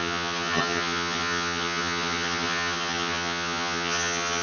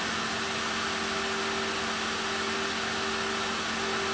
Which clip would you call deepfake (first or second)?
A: first